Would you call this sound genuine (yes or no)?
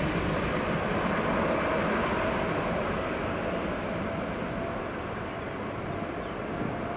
yes